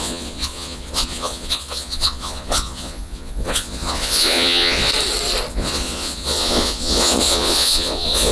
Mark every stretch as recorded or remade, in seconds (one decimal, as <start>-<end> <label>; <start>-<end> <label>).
0.0-4.9 remade; 4.9-5.5 recorded; 5.5-8.3 remade